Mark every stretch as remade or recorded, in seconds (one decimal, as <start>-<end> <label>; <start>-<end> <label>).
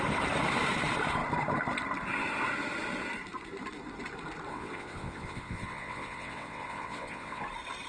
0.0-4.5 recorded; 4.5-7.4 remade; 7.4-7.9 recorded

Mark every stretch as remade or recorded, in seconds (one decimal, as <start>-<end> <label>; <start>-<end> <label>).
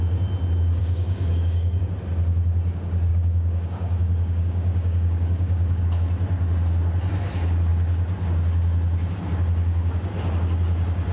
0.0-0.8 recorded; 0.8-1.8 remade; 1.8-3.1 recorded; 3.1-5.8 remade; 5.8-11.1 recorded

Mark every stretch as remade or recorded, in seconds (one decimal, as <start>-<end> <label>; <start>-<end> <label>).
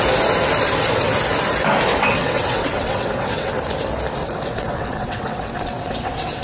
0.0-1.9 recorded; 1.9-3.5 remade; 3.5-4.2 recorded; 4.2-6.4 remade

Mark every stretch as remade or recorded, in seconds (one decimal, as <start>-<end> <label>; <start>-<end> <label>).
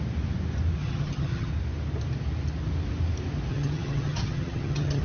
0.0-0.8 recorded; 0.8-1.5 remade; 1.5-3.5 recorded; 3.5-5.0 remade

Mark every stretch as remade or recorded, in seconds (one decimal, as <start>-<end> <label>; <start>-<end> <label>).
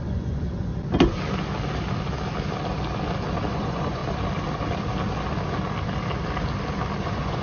0.0-0.7 remade; 0.7-3.5 recorded; 3.5-4.0 remade; 4.0-7.0 recorded; 7.0-7.4 remade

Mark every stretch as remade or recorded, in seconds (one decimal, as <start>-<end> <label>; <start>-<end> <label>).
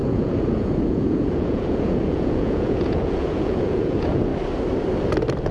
0.0-4.3 remade; 4.3-5.5 recorded